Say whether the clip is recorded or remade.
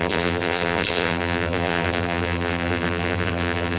remade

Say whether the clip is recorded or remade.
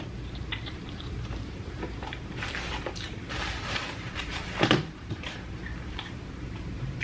remade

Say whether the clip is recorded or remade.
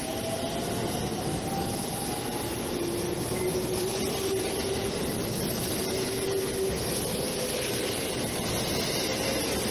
recorded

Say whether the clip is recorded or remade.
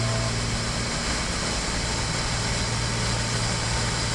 recorded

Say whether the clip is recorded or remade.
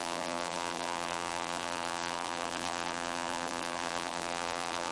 remade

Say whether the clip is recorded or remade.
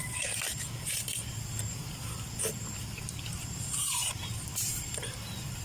remade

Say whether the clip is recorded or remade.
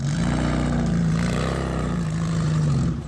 remade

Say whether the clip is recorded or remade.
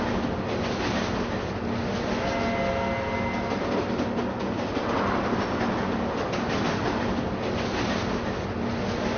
recorded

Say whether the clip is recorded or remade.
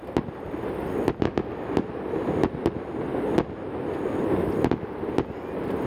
recorded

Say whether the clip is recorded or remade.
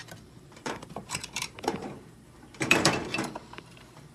remade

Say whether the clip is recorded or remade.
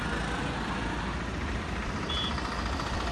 recorded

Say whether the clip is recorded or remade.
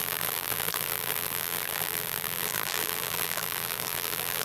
remade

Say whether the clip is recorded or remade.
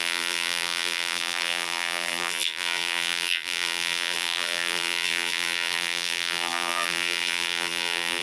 remade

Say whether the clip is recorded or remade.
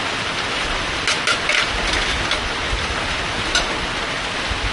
recorded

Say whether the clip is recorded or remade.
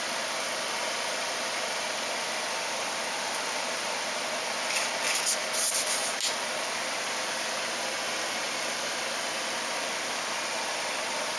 remade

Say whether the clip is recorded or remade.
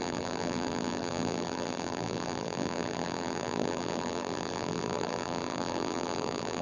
remade